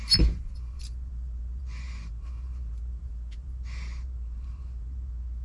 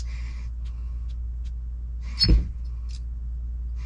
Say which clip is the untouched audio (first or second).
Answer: second